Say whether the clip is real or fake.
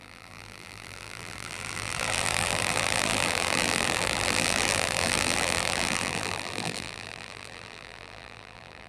fake